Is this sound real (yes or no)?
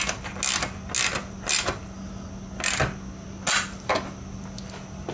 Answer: yes